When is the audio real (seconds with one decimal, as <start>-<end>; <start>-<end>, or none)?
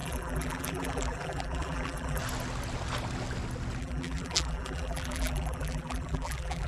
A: 2.2-3.8